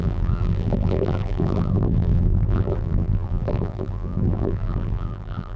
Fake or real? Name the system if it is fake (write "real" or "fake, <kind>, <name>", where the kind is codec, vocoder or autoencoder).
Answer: fake, vocoder, BigVGAN v2